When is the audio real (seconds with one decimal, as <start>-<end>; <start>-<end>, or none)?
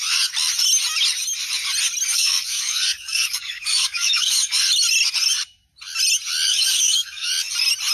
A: 0.0-2.1; 4.6-6.5; 7.3-7.9